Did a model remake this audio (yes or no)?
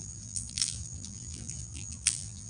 yes